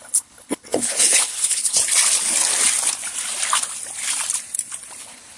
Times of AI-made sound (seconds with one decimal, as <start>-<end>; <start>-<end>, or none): 0.0-1.8; 5.0-5.4